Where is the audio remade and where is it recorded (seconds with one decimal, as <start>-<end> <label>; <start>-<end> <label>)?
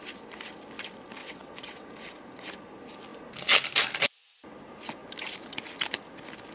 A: 0.0-1.2 recorded; 1.2-1.9 remade; 1.9-6.5 recorded